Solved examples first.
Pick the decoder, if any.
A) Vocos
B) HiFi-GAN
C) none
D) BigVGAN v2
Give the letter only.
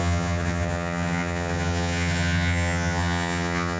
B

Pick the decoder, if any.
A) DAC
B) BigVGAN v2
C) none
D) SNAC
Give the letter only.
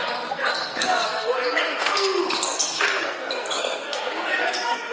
D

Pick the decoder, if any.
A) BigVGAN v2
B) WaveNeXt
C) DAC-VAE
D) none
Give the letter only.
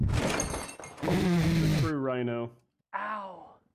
D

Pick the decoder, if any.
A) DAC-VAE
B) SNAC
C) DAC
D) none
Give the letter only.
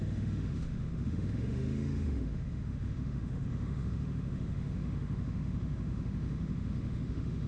A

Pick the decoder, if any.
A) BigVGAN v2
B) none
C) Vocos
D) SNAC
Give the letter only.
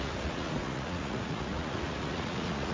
C